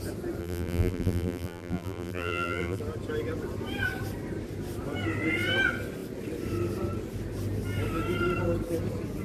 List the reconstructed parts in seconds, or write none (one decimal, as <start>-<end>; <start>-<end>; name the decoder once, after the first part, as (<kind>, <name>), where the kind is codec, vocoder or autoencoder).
0.4-2.8 (vocoder, BigVGAN v2)